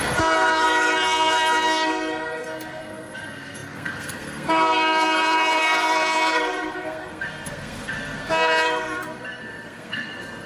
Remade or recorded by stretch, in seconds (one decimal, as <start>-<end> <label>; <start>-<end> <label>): 0.0-10.5 remade